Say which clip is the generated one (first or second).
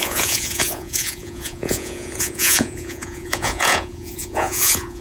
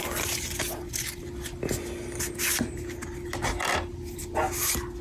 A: first